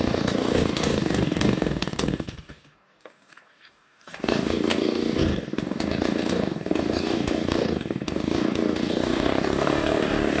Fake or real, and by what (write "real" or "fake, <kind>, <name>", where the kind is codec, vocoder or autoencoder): fake, codec, DAC